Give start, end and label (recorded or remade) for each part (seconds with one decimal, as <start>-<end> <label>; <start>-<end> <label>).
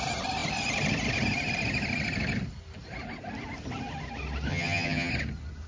0.0-4.5 recorded; 4.5-5.1 remade; 5.1-5.7 recorded